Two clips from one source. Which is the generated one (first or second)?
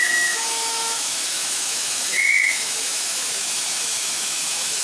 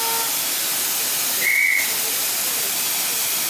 first